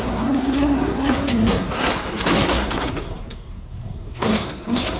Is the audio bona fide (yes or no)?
no